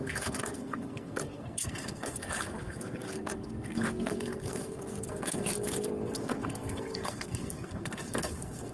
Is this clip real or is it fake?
fake